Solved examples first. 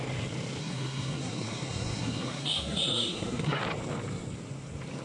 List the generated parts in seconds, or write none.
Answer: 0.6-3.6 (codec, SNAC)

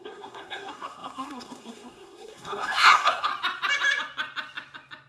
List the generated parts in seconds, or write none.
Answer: 0.0-3.3 (codec, SNAC)